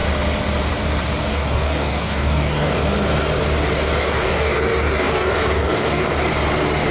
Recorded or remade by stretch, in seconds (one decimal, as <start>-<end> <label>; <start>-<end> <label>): 0.0-1.3 recorded; 1.3-2.8 remade; 2.8-4.0 recorded; 4.0-6.3 remade; 6.3-6.9 recorded